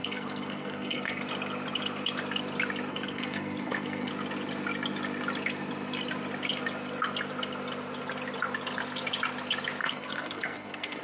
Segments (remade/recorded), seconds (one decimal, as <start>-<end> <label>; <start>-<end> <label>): 0.0-1.2 remade; 1.2-2.9 recorded; 2.9-4.1 remade; 4.1-9.8 recorded; 9.8-11.0 remade